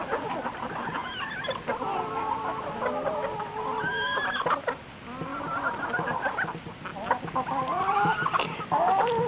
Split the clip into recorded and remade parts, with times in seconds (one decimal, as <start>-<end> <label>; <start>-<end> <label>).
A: 0.0-9.3 recorded

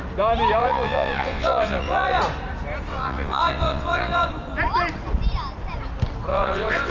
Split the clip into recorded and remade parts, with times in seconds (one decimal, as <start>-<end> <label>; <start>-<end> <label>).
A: 0.0-0.6 recorded; 0.6-2.2 remade; 2.2-2.9 recorded; 2.9-4.3 remade; 4.3-6.3 recorded; 6.3-6.9 remade

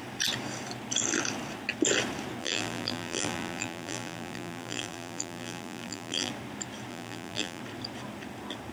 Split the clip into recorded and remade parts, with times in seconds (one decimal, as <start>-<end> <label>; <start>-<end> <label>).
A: 0.0-2.4 recorded; 2.4-6.3 remade; 6.3-6.9 recorded; 6.9-7.6 remade; 7.6-8.7 recorded

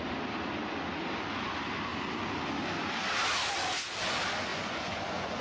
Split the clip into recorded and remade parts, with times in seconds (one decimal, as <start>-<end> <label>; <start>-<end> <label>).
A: 0.0-4.5 recorded; 4.5-5.4 remade

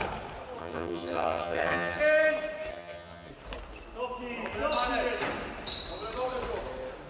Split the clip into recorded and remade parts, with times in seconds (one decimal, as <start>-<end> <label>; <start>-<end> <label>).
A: 0.0-0.6 recorded; 0.6-2.0 remade; 2.0-2.7 recorded; 2.7-3.3 remade; 3.3-7.1 recorded

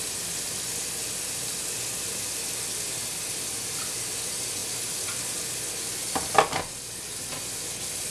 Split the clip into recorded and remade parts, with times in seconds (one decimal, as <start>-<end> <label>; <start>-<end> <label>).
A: 0.0-8.1 recorded